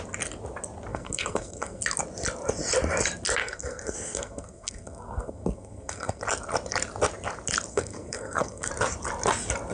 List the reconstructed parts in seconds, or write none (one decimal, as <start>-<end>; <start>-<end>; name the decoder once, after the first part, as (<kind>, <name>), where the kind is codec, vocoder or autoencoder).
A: 0.9-1.8 (codec, SNAC); 3.4-6.2; 7.7-8.7